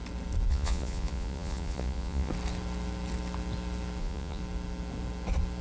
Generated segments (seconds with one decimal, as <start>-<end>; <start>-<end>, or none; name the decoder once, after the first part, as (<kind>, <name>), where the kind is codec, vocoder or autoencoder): 0.5-2.3 (vocoder, Vocos); 4.0-4.4